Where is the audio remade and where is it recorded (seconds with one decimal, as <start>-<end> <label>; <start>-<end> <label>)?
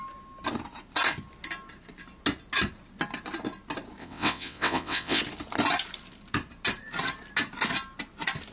0.0-4.0 recorded; 4.0-5.2 remade; 5.2-8.5 recorded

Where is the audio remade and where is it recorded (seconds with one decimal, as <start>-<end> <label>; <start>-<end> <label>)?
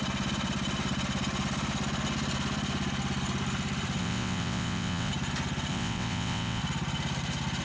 0.0-4.0 recorded; 4.0-5.1 remade; 5.1-5.7 recorded; 5.7-6.6 remade; 6.6-7.6 recorded